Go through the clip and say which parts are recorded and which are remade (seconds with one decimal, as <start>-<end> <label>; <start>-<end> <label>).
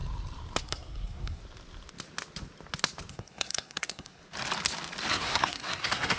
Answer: 0.0-0.6 recorded; 0.6-1.4 remade; 1.4-3.1 recorded; 3.1-4.2 remade; 4.2-5.1 recorded; 5.1-6.2 remade